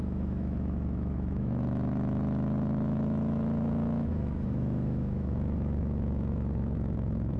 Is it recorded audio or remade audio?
remade